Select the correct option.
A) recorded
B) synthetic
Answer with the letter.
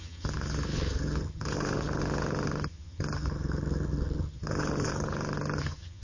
B